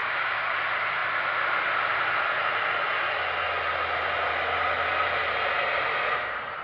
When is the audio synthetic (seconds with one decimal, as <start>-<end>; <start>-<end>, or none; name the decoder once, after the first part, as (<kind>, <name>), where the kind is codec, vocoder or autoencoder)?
0.0-0.5 (codec, DAC)